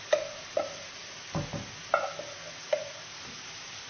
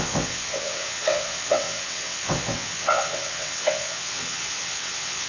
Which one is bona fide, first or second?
first